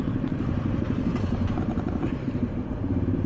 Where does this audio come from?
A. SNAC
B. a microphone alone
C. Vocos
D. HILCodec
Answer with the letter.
B